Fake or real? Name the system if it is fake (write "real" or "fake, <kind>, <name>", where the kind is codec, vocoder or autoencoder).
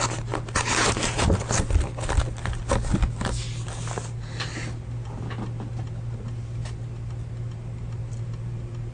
real